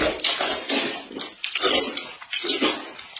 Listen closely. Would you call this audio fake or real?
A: real